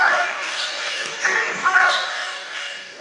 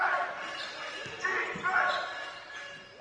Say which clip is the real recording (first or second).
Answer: second